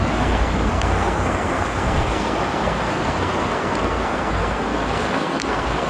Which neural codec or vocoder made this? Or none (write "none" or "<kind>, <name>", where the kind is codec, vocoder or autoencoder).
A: codec, SNAC